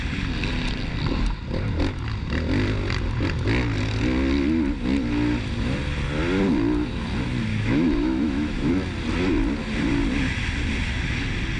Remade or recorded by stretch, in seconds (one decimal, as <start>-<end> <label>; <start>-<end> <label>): 0.0-7.5 recorded; 7.5-8.7 remade; 8.7-11.6 recorded